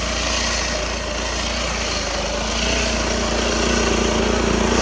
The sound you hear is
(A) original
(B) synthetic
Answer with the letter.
A